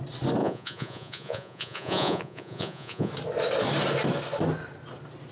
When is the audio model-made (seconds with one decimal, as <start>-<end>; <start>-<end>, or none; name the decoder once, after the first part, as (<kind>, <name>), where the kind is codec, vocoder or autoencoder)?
0.4-3.1 (vocoder, Vocos)